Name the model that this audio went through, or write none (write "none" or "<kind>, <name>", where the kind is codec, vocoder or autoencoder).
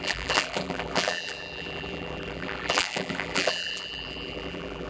vocoder, BigVGAN v2